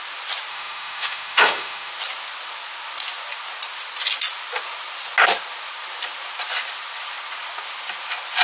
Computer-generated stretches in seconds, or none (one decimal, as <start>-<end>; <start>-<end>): 0.5-1.9